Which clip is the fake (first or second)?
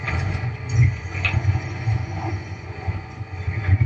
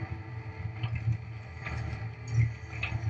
first